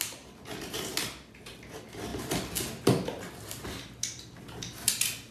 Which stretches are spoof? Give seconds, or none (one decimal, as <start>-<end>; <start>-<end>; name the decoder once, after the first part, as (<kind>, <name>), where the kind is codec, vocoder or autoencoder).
none